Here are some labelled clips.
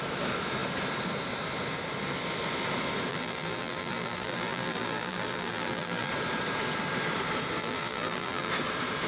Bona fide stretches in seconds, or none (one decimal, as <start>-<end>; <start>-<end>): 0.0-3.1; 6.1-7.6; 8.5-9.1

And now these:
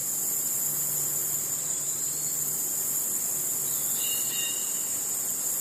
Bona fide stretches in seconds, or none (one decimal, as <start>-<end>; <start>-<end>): 0.0-5.6

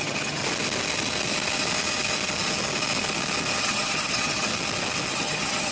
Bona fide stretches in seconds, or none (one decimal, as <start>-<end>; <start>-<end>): 0.4-3.6; 4.5-5.1

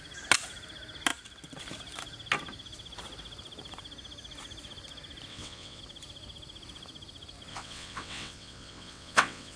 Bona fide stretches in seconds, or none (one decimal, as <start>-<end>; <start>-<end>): 0.0-5.3; 5.8-7.5